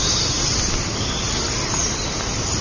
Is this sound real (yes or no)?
yes